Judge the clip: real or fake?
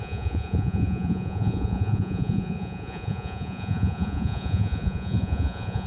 fake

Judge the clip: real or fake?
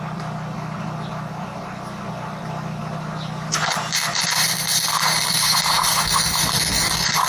real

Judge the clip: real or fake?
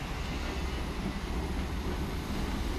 real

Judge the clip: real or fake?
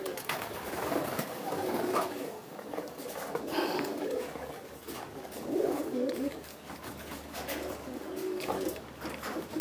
fake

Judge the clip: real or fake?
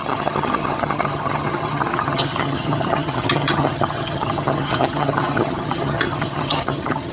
fake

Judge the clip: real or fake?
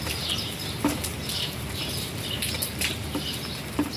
fake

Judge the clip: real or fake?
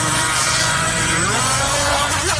fake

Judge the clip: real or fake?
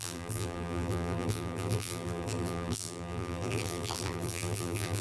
fake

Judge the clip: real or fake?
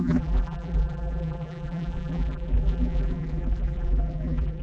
fake